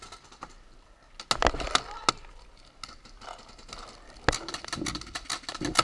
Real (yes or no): yes